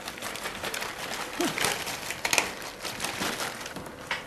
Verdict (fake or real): fake